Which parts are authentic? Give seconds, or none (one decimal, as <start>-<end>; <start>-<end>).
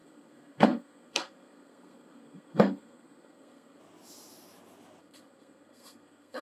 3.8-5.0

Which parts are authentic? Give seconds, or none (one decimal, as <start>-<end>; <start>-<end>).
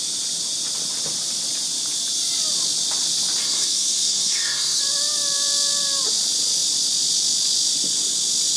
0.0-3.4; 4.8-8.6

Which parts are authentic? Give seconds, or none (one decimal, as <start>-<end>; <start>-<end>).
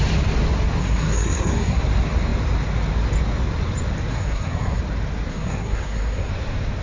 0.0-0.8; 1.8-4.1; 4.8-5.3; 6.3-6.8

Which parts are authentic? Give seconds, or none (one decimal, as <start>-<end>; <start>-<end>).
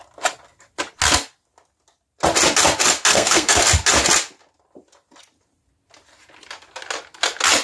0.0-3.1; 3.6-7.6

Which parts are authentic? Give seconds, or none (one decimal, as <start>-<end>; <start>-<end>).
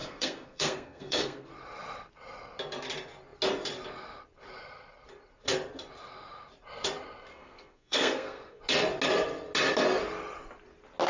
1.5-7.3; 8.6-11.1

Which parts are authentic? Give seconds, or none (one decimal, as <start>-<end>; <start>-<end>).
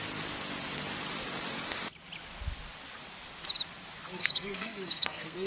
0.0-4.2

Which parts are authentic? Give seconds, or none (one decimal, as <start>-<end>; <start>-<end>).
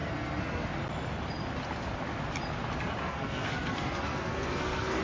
0.7-3.0